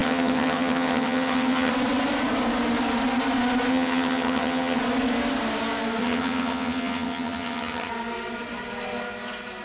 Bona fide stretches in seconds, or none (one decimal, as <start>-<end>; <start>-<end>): 1.7-3.7; 4.8-6.0; 7.9-9.6